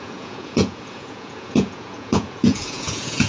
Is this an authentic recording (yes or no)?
no